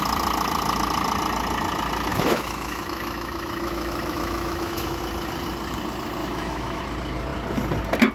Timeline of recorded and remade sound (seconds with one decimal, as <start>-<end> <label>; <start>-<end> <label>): 0.0-2.1 recorded; 2.1-5.0 remade; 5.0-6.2 recorded; 6.2-6.8 remade; 6.8-8.1 recorded